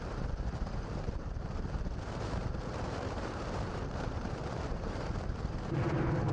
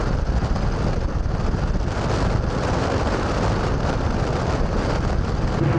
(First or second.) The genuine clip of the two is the second